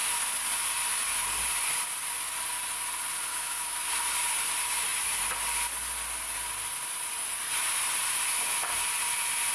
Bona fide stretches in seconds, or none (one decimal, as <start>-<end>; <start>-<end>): 0.0-3.3; 3.9-9.5